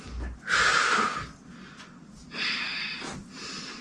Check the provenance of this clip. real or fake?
real